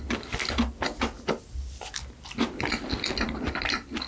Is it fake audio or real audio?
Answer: real